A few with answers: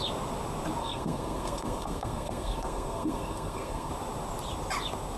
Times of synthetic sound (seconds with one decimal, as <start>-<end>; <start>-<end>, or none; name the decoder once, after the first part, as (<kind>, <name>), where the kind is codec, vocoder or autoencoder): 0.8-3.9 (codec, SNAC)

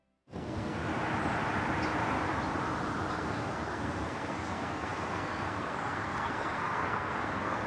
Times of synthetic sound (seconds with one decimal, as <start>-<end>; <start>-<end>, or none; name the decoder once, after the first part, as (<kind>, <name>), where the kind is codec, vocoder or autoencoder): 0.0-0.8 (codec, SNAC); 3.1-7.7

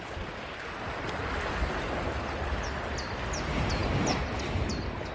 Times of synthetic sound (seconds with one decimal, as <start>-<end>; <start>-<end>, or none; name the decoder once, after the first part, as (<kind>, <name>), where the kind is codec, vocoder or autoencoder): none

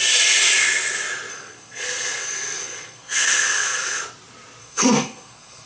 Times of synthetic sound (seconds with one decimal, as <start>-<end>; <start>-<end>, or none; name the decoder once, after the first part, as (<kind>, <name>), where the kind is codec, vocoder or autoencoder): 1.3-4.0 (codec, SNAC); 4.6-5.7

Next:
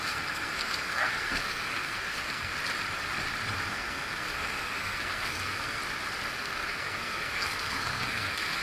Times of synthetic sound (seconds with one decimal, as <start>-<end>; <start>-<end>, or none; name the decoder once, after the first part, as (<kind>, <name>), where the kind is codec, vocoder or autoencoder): 0.0-2.5 (codec, SNAC); 3.7-5.8; 6.4-8.6